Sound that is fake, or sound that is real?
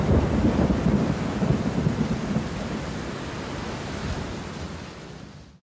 real